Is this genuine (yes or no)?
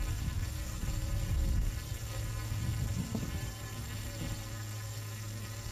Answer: no